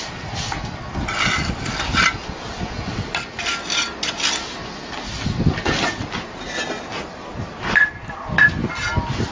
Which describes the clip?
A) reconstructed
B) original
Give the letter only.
B